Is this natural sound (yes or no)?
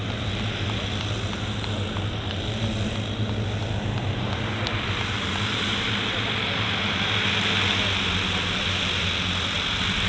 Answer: yes